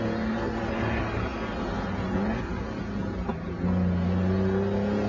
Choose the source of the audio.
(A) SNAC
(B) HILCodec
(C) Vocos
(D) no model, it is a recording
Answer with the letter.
D